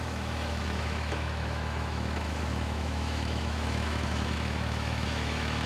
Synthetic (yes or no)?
yes